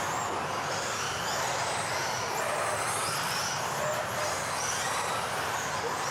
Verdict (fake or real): real